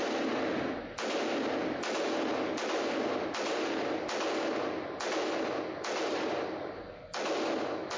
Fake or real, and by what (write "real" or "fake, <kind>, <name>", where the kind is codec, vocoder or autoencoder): real